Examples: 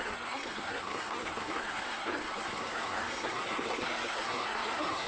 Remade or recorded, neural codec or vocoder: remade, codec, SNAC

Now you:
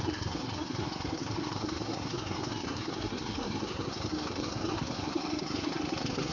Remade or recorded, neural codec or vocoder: remade, codec, SNAC